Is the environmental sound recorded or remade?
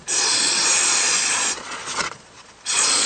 remade